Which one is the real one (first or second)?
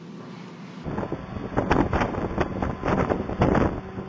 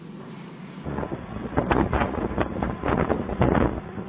first